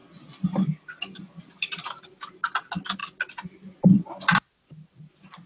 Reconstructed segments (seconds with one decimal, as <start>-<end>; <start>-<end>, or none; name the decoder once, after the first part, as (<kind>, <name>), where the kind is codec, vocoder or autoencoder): none